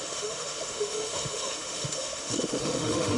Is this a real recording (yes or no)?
no